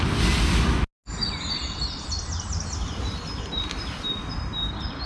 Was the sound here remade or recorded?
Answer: recorded